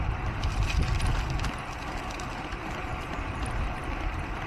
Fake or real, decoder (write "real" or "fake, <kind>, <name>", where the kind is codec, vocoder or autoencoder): real